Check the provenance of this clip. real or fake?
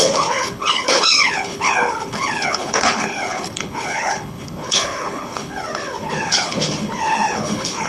fake